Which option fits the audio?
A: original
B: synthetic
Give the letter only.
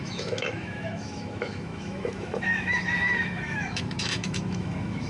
B